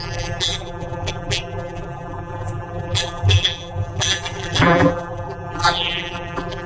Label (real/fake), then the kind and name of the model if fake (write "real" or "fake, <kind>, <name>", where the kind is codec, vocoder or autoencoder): fake, vocoder, BigVGAN v2